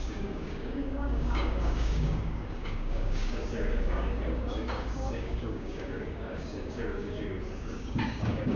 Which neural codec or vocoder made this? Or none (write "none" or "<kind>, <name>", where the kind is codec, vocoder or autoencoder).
codec, DAC